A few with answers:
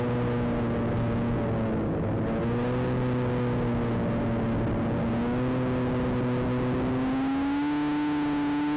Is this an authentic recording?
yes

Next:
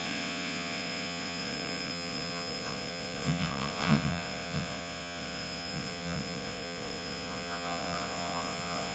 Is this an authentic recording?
no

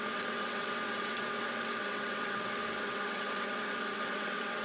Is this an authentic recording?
no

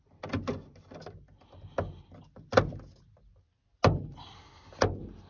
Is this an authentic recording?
yes